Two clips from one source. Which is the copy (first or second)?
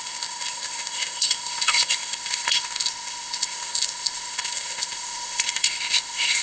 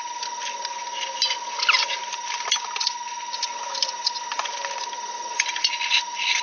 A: first